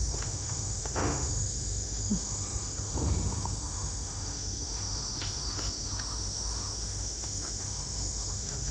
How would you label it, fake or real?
fake